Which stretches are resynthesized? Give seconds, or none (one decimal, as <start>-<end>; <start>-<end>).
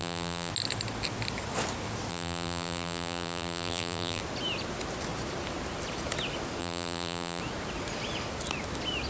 0.0-0.5; 2.1-4.2; 6.6-7.4